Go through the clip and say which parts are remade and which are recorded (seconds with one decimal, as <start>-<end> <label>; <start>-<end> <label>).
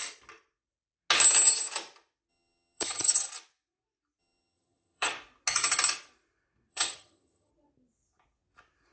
0.0-2.3 recorded; 2.3-3.3 remade; 3.3-4.2 recorded; 4.2-5.1 remade; 5.1-6.7 recorded; 6.7-7.5 remade; 7.5-8.9 recorded